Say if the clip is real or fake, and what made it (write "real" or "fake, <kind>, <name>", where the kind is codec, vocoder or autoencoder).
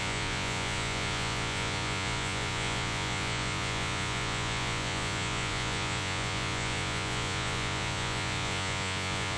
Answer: fake, vocoder, Vocos